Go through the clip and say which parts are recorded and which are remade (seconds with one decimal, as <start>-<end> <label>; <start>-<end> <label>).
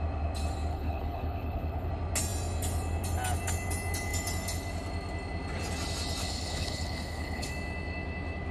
0.0-0.7 recorded; 0.7-1.9 remade; 1.9-6.2 recorded; 6.2-7.5 remade; 7.5-8.5 recorded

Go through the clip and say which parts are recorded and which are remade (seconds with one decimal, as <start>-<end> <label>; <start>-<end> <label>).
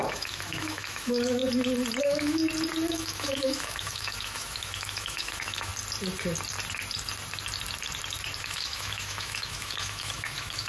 0.0-1.4 remade; 1.4-2.0 recorded; 2.0-2.4 remade; 2.4-2.9 recorded; 2.9-5.7 remade; 5.7-8.4 recorded; 8.4-10.7 remade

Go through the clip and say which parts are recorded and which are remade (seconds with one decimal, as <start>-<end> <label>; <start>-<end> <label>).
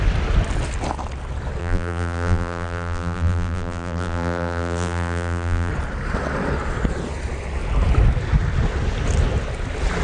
0.0-1.6 recorded; 1.6-5.7 remade; 5.7-10.0 recorded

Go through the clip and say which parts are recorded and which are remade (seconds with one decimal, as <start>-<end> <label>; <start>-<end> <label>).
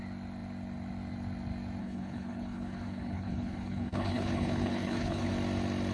0.0-1.8 recorded; 1.8-5.3 remade; 5.3-5.9 recorded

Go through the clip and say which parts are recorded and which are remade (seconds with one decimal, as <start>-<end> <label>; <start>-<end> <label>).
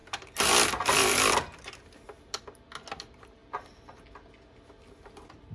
0.0-5.5 recorded